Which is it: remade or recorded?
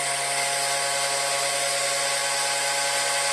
recorded